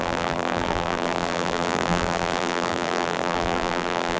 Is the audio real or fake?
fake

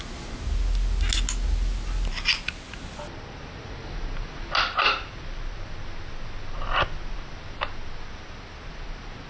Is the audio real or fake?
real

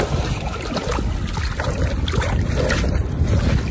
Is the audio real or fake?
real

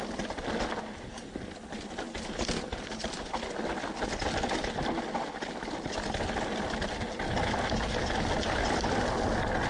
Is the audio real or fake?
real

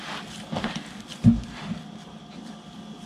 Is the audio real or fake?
real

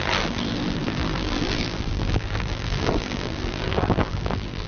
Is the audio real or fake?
fake